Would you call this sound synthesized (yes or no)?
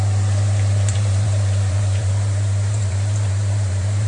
yes